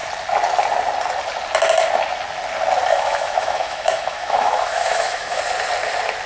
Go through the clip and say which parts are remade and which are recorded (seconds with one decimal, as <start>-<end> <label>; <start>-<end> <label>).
0.0-2.9 recorded; 2.9-5.4 remade; 5.4-6.3 recorded